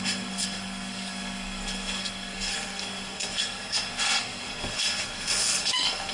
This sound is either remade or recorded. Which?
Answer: remade